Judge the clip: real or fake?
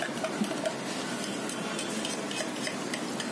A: real